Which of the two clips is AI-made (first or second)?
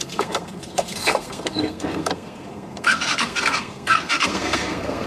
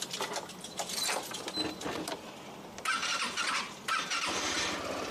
first